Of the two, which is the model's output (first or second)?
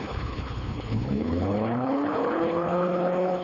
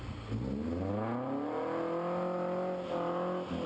first